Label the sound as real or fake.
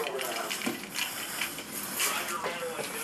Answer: fake